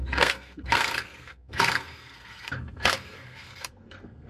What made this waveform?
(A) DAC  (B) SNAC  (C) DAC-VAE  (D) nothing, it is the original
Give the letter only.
B